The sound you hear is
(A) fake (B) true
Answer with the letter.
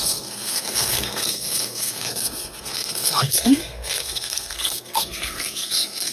A